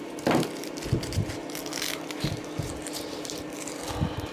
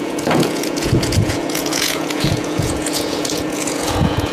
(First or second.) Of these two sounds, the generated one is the second